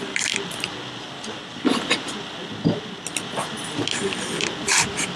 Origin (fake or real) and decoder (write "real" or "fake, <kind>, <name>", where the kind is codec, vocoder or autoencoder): real